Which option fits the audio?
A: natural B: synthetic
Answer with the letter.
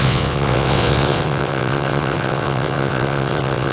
B